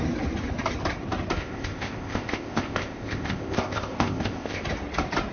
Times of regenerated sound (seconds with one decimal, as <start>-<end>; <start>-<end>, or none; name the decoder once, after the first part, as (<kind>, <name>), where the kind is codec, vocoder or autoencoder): 1.4-4.6 (codec, ZipCodec)